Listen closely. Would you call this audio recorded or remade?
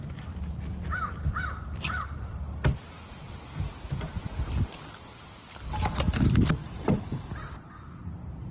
recorded